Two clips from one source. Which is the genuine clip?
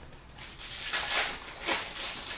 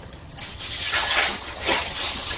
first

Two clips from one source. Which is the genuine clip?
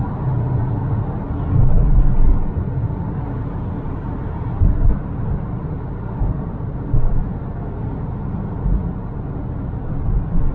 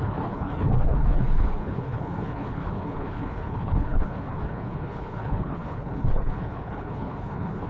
first